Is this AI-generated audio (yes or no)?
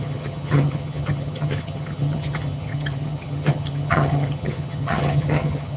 yes